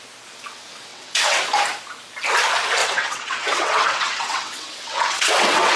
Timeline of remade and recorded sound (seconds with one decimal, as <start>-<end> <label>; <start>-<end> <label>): 0.0-0.9 recorded; 0.9-1.4 remade; 1.4-2.8 recorded; 2.8-5.8 remade